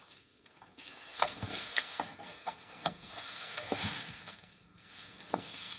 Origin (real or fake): fake